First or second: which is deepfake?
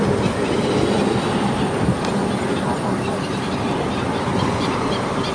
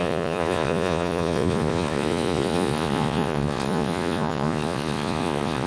second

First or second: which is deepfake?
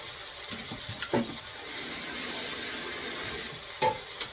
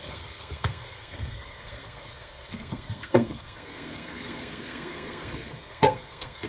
second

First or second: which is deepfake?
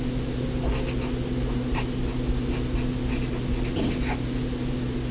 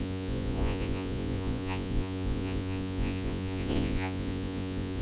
second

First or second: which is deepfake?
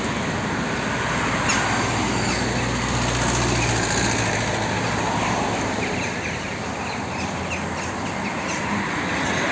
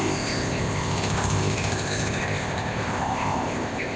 second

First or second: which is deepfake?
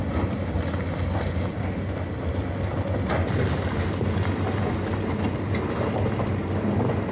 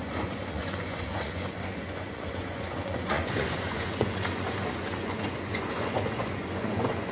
second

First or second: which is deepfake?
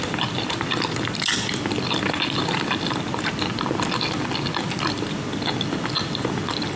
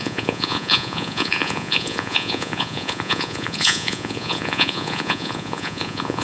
second